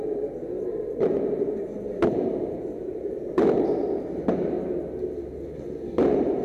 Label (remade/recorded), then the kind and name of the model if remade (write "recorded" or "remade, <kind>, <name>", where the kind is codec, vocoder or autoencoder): recorded